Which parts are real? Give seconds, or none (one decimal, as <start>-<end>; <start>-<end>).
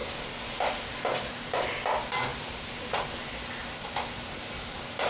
0.0-5.1